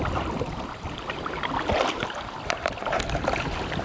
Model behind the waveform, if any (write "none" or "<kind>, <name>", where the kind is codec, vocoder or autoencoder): none